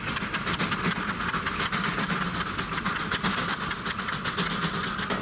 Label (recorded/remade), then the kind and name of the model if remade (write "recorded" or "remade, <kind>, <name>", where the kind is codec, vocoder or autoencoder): recorded